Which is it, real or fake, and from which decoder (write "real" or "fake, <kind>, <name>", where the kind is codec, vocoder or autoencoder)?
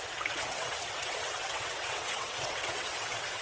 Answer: fake, vocoder, WaveNeXt